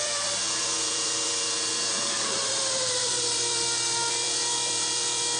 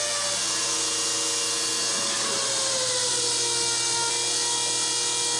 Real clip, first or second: second